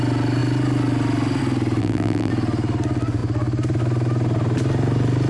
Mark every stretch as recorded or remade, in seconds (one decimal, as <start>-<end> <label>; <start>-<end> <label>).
0.0-1.8 recorded; 1.8-2.3 remade; 2.3-5.3 recorded